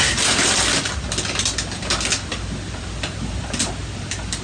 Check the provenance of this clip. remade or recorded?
recorded